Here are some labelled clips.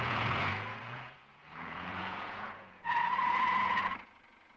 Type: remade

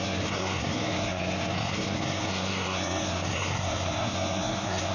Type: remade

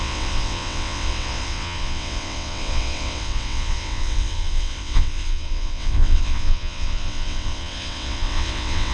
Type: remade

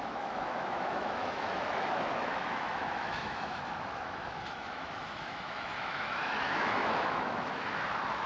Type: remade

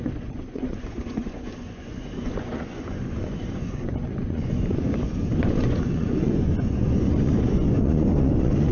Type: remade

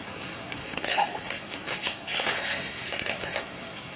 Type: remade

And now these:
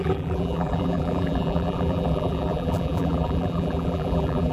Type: remade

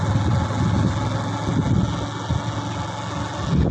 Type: recorded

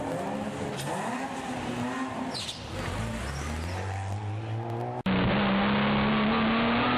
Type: recorded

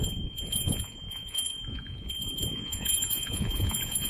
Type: remade